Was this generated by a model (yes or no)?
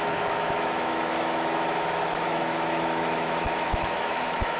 yes